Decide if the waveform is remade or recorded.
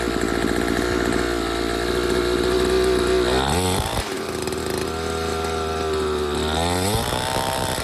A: recorded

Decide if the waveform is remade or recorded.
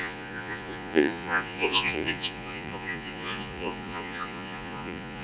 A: remade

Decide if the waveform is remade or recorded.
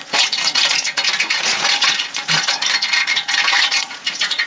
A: remade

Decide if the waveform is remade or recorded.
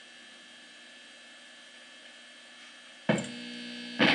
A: recorded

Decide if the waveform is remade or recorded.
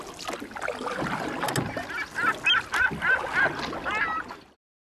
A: recorded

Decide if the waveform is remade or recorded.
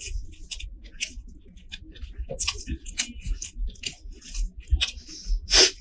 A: recorded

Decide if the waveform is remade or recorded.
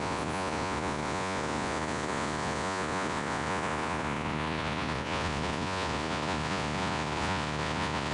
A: remade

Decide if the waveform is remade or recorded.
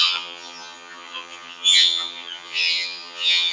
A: remade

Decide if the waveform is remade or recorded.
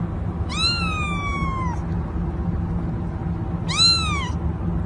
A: recorded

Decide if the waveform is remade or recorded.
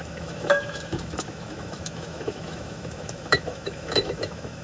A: remade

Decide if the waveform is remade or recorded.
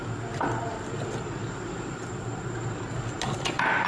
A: recorded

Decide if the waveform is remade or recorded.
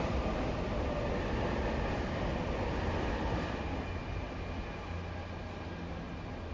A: recorded